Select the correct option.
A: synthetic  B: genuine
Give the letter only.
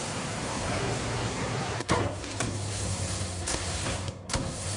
A